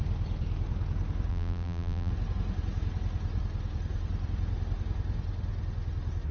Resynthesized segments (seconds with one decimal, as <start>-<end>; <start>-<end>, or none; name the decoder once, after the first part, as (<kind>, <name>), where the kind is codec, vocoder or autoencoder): 1.3-2.1 (vocoder, BigVGAN v2)